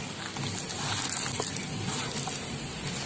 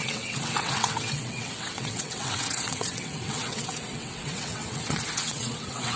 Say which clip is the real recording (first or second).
first